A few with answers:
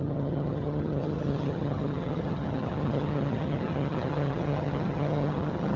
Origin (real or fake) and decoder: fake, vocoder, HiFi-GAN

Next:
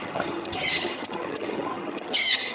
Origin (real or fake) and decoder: fake, vocoder, HiFi-GAN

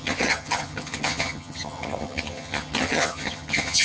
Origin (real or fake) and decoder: fake, vocoder, HiFi-GAN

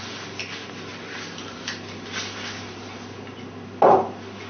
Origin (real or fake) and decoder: real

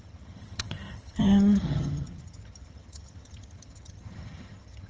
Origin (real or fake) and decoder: fake, vocoder, HiFi-GAN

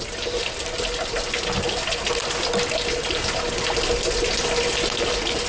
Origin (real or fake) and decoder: real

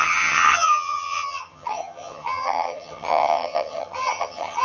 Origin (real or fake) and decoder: fake, vocoder, HiFi-GAN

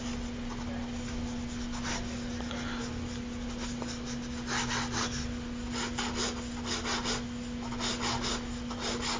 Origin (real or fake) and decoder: real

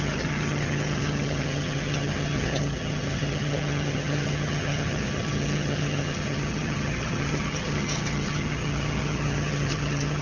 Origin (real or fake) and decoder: fake, vocoder, HiFi-GAN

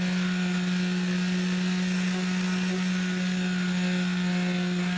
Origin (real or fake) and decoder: real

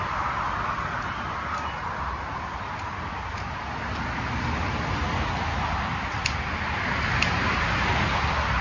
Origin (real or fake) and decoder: real